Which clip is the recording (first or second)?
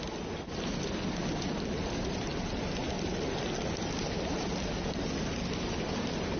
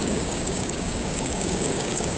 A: first